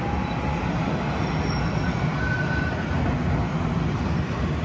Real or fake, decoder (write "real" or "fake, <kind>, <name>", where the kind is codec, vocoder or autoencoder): real